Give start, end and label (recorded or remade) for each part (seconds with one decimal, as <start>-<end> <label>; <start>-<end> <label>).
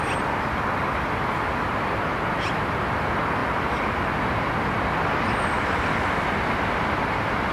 0.0-7.5 recorded